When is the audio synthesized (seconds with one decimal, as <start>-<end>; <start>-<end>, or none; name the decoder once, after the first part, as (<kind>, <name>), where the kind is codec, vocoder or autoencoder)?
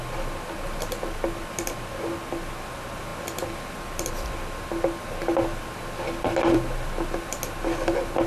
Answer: none